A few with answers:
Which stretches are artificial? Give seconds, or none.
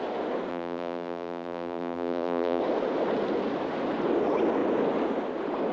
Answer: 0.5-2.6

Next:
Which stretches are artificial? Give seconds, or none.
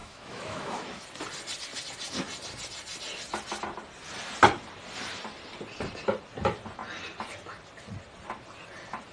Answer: 0.0-1.0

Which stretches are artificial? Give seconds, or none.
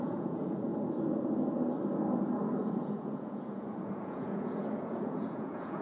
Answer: 0.0-0.7; 2.5-5.8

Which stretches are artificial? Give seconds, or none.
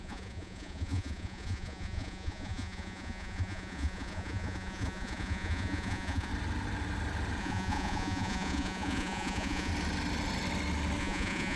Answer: 0.0-6.3; 7.4-9.7; 11.0-11.6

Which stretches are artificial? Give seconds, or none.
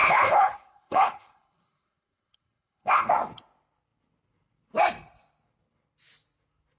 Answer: 0.0-3.1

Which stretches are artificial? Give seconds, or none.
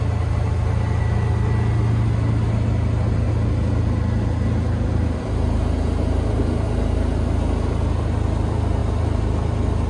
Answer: none